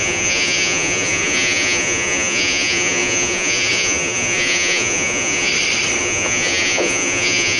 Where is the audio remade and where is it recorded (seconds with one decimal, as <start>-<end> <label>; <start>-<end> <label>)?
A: 0.0-5.5 remade; 5.5-6.0 recorded; 6.0-7.6 remade